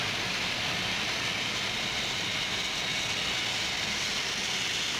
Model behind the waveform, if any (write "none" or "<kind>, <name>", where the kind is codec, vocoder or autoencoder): none